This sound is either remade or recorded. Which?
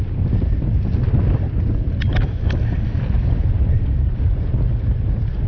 recorded